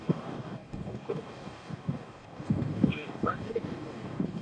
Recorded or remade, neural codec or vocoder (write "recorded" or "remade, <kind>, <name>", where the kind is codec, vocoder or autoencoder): remade, codec, DAC